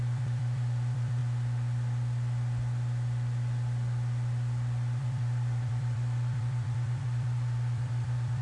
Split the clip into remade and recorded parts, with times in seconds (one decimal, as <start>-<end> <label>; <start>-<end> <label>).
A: 0.0-1.2 remade; 1.2-5.0 recorded; 5.0-8.4 remade